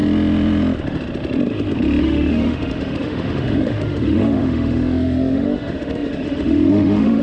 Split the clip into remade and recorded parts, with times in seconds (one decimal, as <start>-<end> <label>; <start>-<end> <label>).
0.0-2.0 recorded; 2.0-7.2 remade